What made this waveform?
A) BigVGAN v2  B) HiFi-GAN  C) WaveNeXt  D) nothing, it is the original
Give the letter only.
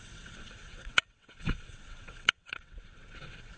C